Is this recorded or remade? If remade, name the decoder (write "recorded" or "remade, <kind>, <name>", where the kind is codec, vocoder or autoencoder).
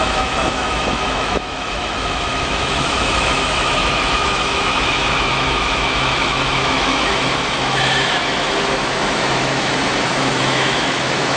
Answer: remade, autoencoder, DAC-VAE